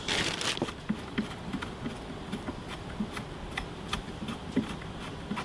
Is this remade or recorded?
recorded